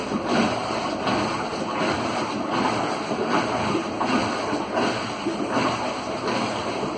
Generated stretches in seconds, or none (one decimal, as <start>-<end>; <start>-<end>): none